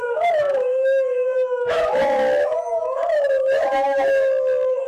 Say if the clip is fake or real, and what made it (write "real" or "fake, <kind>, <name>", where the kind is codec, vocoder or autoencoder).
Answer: fake, autoencoder, DAC-VAE